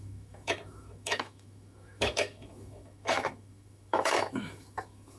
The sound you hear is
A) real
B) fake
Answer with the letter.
B